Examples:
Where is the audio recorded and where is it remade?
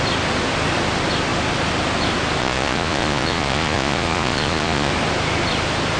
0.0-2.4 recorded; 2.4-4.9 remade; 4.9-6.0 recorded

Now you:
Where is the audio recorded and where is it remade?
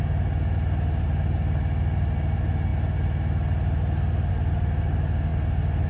0.0-5.9 recorded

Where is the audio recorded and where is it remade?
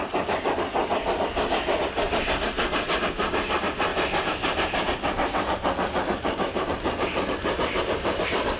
0.0-3.9 recorded; 3.9-8.2 remade; 8.2-8.6 recorded